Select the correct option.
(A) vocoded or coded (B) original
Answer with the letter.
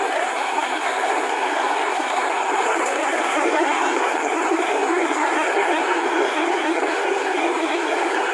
A